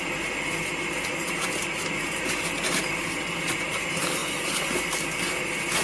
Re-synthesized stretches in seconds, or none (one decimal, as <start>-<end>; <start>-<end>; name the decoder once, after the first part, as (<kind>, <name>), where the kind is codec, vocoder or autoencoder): 0.0-4.2 (vocoder, BigVGAN v2); 4.8-5.8